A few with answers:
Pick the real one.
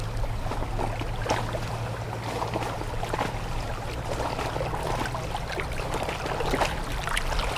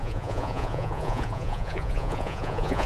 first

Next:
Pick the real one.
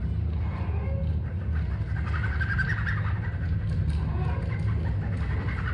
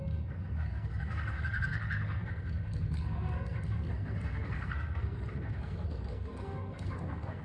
first